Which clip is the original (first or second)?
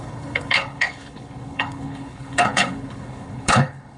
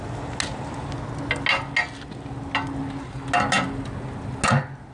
second